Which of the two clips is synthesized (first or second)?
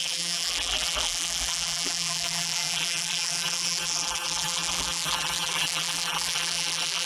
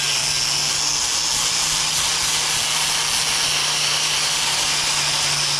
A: first